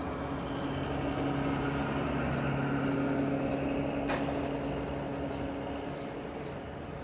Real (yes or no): yes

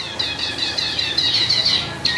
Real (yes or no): yes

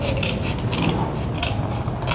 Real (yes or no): yes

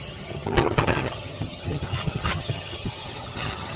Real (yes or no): no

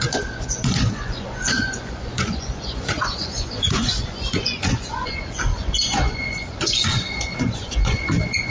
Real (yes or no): no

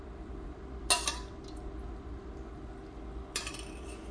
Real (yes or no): yes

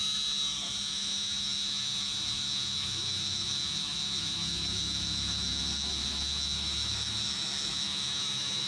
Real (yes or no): no